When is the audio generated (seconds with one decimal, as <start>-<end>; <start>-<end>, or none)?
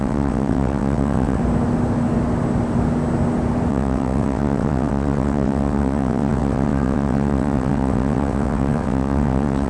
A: 0.0-1.4; 3.7-9.7